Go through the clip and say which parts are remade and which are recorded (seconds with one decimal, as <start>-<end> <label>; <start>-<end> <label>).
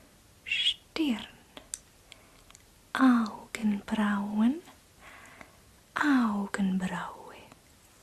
0.0-8.0 recorded